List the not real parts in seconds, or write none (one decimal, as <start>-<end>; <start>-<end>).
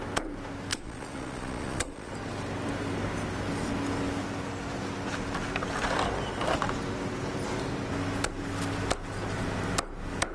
0.7-2.1